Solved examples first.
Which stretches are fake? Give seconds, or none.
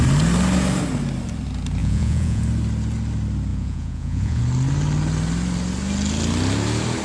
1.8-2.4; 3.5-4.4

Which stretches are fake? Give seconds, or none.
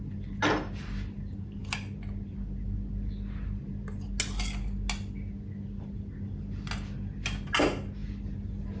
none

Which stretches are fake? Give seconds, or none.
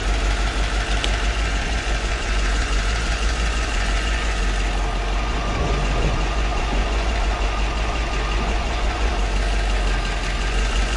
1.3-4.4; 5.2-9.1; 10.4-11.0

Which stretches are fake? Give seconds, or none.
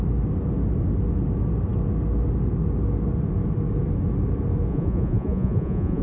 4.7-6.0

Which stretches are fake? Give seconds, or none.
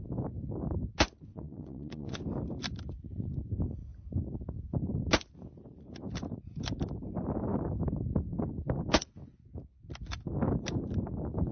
1.3-2.2